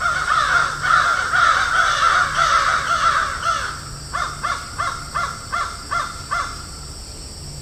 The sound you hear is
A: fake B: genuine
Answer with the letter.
B